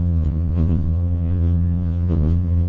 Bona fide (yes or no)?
no